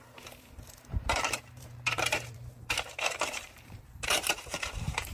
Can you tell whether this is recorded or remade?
remade